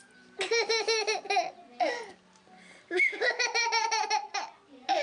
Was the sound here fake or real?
real